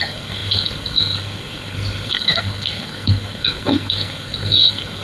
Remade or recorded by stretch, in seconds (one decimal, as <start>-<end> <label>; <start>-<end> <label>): 0.0-5.0 remade